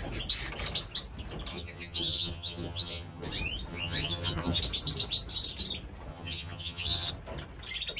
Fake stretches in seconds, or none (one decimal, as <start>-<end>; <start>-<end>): 1.5-3.3; 3.7-4.6; 6.1-7.1

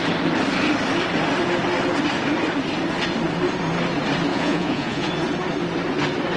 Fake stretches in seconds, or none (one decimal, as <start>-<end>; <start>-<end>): 4.3-5.1

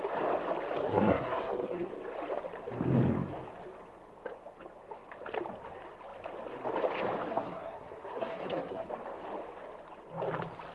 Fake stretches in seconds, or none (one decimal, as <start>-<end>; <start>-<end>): 0.8-1.9; 7.3-8.9

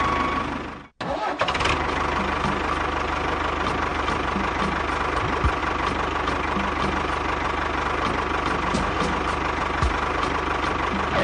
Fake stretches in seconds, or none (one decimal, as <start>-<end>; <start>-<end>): none

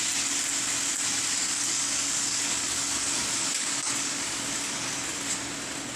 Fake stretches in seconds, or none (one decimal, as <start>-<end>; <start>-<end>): 1.4-5.0